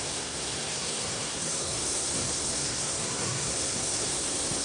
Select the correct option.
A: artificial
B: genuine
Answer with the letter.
A